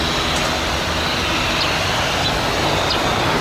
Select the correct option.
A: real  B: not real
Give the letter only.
A